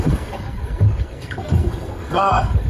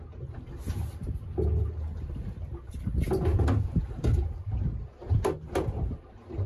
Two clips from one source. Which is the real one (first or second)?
second